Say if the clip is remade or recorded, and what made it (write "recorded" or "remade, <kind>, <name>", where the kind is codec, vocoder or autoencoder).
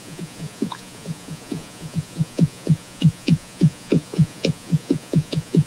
remade, vocoder, Vocos